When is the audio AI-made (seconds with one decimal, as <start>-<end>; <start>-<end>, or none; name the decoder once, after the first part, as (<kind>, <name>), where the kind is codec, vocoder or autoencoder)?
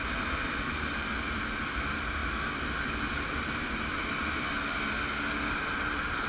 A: none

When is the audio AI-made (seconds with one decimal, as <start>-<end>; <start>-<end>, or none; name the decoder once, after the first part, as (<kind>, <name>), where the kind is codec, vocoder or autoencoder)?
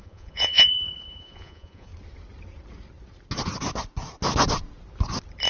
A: 0.0-1.9 (vocoder, Vocos)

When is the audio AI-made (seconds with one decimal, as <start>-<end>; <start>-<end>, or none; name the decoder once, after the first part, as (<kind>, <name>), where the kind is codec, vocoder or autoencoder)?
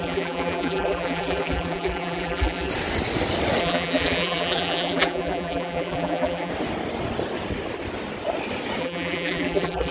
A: 0.0-2.7 (vocoder, BigVGAN v2); 3.6-6.5; 8.8-9.9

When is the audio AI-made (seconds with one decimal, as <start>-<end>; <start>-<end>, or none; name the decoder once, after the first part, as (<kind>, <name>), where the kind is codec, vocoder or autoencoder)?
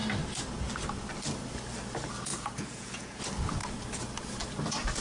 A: 2.3-3.2 (vocoder, Vocos)